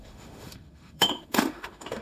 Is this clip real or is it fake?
fake